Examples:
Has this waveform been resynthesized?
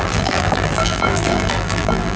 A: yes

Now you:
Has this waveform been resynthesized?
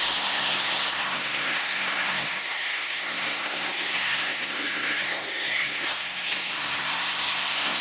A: yes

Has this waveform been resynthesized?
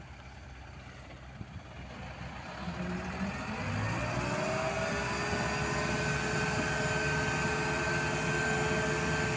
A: no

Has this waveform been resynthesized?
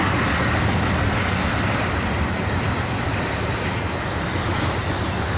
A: no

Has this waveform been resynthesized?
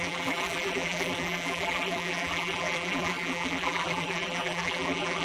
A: yes